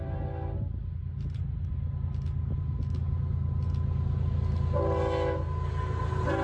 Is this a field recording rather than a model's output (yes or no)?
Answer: yes